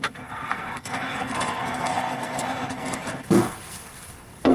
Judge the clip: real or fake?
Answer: fake